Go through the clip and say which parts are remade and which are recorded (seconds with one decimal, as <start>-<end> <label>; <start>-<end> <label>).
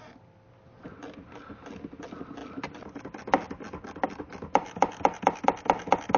0.0-6.2 recorded